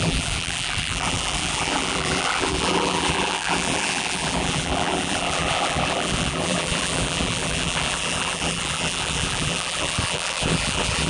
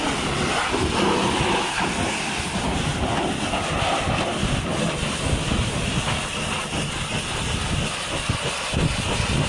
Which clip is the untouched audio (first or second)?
second